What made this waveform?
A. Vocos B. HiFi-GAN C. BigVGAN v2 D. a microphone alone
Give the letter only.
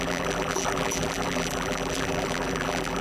C